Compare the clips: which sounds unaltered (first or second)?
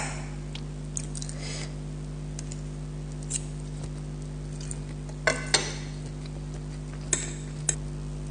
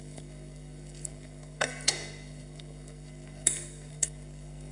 first